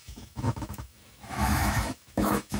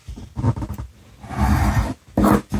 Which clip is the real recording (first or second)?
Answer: second